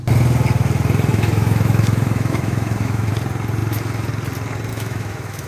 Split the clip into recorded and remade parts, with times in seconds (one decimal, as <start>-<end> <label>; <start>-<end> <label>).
0.0-1.1 recorded; 1.1-3.1 remade; 3.1-4.7 recorded; 4.7-5.5 remade